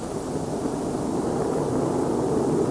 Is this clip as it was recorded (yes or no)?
yes